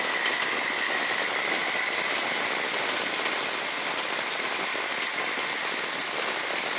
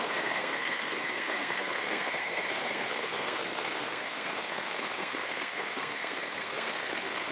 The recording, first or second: first